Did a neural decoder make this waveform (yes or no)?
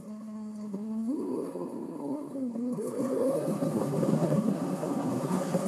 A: yes